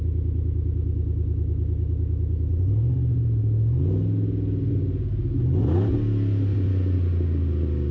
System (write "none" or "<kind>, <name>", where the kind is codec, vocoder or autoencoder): none